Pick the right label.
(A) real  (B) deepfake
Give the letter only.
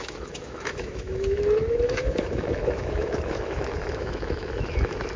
B